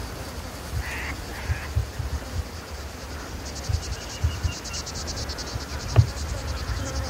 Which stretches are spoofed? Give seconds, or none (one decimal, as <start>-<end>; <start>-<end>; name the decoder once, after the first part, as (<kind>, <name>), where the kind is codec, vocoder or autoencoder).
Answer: 1.8-3.4 (vocoder, BigVGAN v2); 5.7-6.3